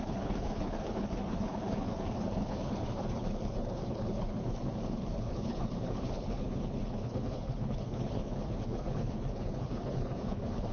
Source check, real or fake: fake